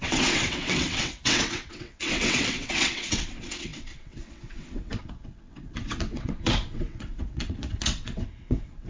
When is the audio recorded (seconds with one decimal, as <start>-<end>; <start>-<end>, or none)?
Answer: none